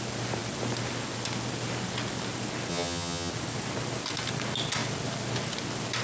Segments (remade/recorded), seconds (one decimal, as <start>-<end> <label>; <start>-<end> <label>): 0.0-2.7 recorded; 2.7-3.3 remade; 3.3-6.0 recorded